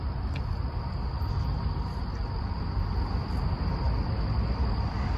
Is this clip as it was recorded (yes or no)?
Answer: yes